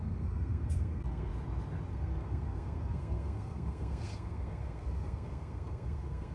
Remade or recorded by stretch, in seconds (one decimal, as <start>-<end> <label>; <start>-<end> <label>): 0.0-1.3 remade; 1.3-1.9 recorded; 1.9-6.3 remade